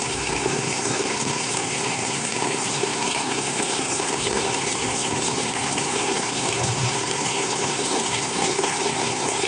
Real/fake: fake